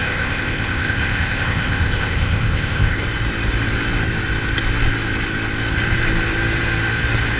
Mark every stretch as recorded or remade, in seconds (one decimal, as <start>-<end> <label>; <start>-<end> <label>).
0.0-3.0 remade; 3.0-7.4 recorded